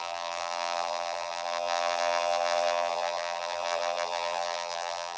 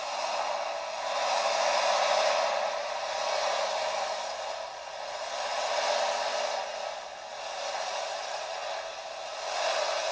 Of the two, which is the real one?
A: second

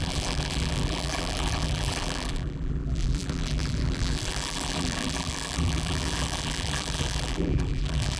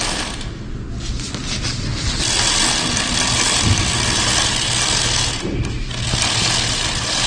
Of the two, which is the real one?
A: second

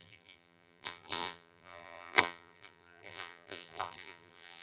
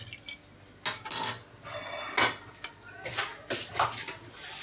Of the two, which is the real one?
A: second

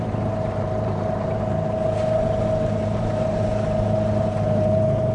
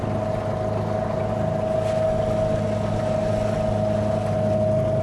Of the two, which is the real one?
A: second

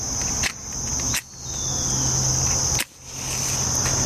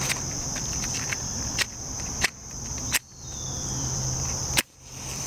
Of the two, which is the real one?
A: first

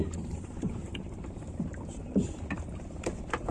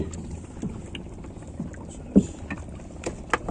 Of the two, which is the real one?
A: second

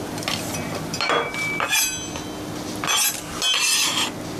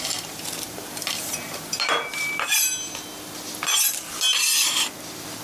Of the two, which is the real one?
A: first